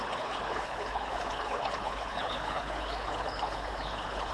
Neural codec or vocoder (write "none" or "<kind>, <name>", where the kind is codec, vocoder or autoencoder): codec, HILCodec